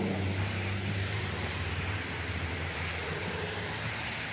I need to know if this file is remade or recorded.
remade